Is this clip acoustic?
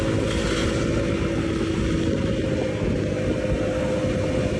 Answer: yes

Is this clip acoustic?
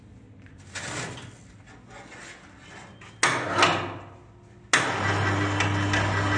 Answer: yes